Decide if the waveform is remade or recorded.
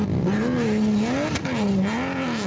recorded